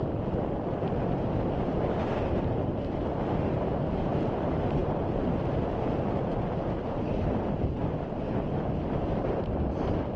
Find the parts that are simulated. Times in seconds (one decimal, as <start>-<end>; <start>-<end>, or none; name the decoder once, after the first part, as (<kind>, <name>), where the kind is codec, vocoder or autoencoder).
4.8-5.8 (vocoder, BigVGAN v2); 7.8-8.6